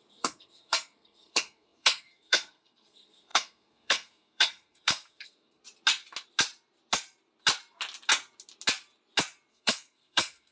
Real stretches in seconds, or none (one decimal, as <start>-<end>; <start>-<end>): 5.6-9.5